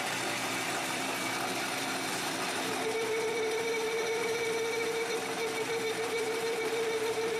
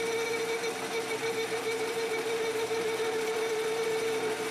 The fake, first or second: first